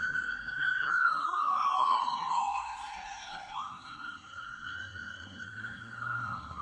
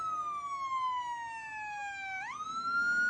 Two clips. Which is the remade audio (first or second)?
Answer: first